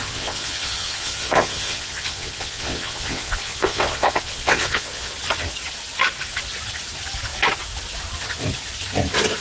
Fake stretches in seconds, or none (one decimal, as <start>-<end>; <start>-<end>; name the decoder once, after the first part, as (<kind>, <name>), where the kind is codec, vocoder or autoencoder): 0.0-5.1 (vocoder, WaveNeXt)